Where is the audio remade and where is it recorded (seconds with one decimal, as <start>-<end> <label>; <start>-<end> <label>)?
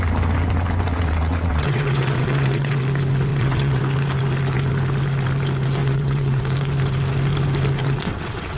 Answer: 0.0-0.9 recorded; 0.9-2.8 remade; 2.8-3.3 recorded; 3.3-3.8 remade; 3.8-5.8 recorded; 5.8-6.4 remade; 6.4-7.8 recorded; 7.8-8.6 remade